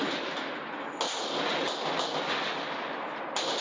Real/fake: real